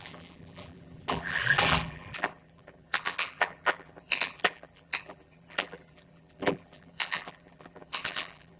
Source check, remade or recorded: remade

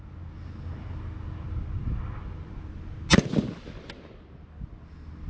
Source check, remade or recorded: recorded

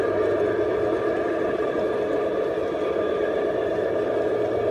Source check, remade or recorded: recorded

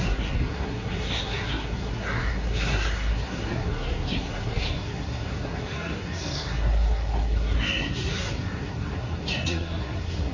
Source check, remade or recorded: remade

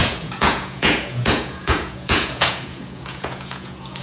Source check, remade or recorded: remade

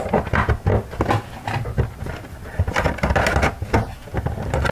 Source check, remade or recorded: recorded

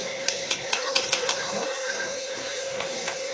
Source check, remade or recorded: remade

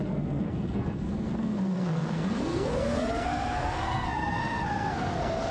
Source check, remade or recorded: remade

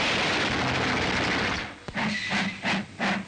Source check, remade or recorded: recorded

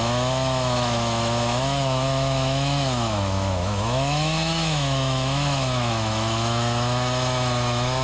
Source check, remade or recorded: remade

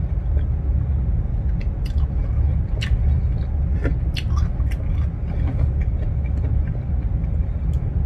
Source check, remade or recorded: recorded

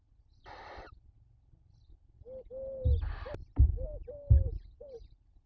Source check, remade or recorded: recorded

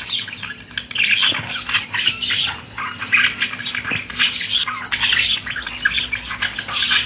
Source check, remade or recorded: recorded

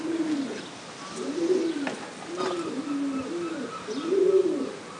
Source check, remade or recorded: recorded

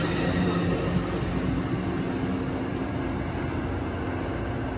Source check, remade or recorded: recorded